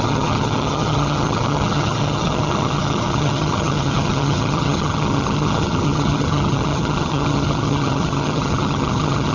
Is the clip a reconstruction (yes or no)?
yes